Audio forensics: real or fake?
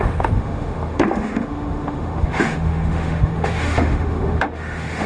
fake